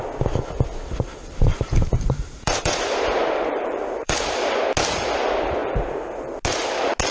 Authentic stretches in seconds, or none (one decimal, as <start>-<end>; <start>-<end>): 0.0-1.2; 4.6-7.1